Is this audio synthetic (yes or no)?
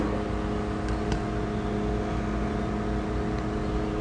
no